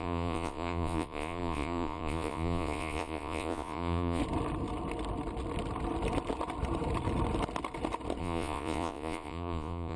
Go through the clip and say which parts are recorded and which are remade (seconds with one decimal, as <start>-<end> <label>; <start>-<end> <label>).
0.0-4.2 remade; 4.2-8.2 recorded; 8.2-10.0 remade